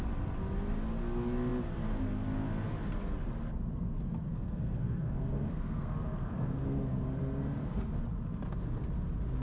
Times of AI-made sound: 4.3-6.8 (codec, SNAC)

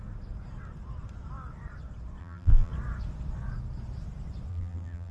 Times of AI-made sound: 2.2-2.7 (vocoder, BigVGAN v2); 4.5-5.1

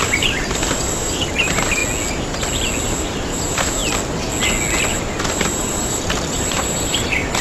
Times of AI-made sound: 0.0-1.8 (vocoder, BigVGAN v2); 2.8-3.8; 4.9-7.4

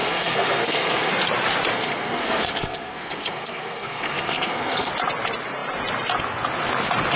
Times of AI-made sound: 0.0-1.1 (codec, SNAC); 1.7-4.9

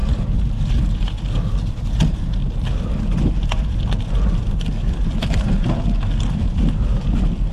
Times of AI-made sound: none